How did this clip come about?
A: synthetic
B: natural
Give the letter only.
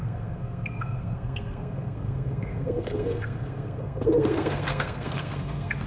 A